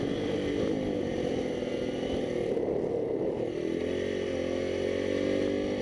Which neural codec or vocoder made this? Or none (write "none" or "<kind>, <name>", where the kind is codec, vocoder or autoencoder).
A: none